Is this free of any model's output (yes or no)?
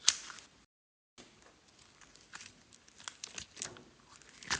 yes